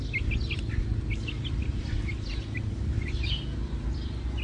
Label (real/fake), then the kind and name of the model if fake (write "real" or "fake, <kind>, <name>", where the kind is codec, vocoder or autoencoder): real